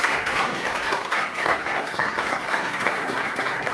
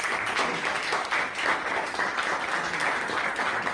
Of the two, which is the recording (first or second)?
second